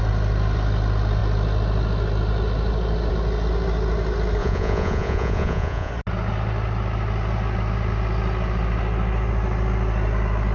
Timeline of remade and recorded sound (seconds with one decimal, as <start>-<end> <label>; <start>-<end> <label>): 0.0-4.4 recorded; 4.4-5.9 remade; 5.9-10.5 recorded